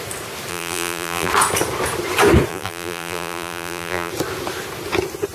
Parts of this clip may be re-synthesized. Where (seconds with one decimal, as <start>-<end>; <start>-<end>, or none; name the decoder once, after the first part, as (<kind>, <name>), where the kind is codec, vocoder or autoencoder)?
0.5-1.3 (vocoder, BigVGAN v2); 2.5-4.1